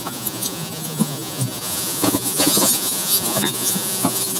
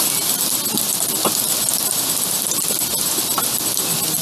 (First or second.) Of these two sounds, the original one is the second